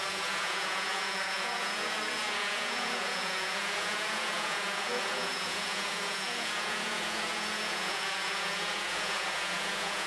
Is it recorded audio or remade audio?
remade